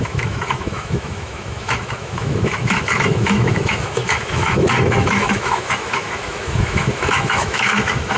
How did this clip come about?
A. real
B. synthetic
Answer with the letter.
B